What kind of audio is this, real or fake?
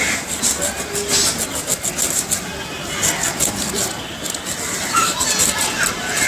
real